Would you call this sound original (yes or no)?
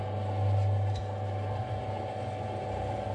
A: yes